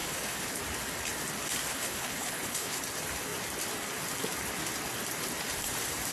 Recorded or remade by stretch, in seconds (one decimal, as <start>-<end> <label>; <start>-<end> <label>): 0.0-0.6 remade; 0.6-1.7 recorded; 1.7-2.8 remade; 2.8-6.1 recorded